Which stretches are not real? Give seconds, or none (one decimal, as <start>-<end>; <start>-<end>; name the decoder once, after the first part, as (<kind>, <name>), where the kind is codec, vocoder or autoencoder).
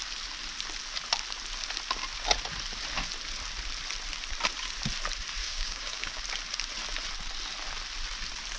5.4-6.2 (codec, DAC)